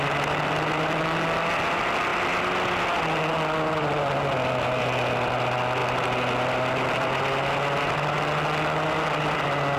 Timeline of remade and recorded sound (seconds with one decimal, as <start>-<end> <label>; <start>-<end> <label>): 0.0-9.8 recorded